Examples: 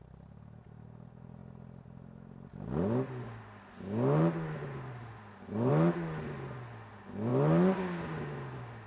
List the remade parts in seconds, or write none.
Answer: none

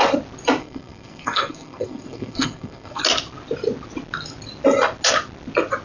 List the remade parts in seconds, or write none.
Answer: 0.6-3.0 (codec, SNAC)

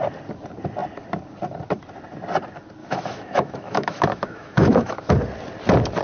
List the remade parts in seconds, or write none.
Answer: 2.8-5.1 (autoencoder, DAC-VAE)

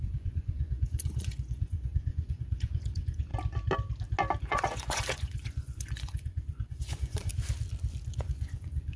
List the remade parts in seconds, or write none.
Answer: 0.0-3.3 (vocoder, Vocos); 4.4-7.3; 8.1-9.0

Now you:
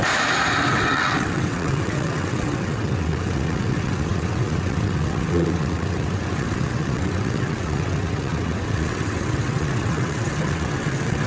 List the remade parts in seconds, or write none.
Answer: 0.7-11.3 (vocoder, WaveNeXt)

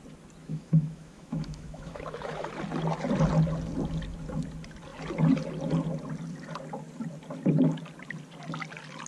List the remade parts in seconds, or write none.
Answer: 0.4-2.5 (autoencoder, DAC-VAE)

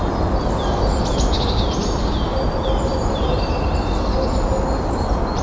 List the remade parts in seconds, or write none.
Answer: none

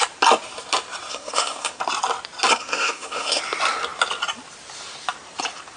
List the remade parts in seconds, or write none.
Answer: 1.1-1.8 (codec, SNAC); 2.5-3.4